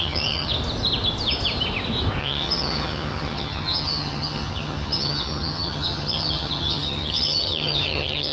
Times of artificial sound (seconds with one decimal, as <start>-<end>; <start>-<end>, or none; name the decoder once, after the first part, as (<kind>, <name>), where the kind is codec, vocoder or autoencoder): 0.0-0.5 (vocoder, HiFi-GAN); 2.2-8.3

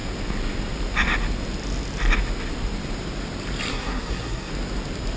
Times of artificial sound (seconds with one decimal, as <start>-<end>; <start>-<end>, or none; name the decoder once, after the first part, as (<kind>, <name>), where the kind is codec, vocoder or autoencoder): 3.7-4.5 (codec, SNAC)

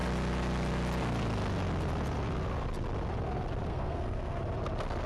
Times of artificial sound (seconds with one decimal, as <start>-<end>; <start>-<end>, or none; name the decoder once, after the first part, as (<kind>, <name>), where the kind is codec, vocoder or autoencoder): 3.7-4.4 (codec, SNAC)

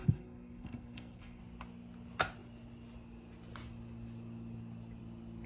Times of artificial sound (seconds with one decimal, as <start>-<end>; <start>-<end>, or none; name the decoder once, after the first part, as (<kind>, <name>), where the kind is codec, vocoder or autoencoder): 0.0-1.4 (codec, SNAC)

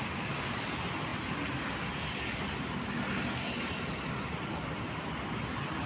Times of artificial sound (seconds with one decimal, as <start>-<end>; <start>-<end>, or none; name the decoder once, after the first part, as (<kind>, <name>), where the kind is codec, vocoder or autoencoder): none